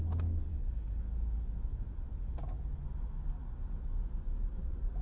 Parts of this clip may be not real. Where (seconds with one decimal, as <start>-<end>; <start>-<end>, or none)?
0.5-1.0